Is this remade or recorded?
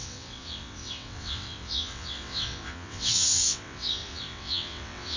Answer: remade